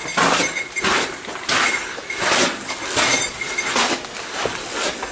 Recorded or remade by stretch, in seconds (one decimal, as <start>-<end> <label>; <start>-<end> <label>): 0.0-5.1 recorded